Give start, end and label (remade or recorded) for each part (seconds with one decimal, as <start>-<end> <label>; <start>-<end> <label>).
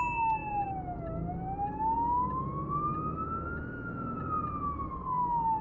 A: 0.0-5.6 recorded